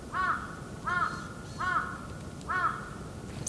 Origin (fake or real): real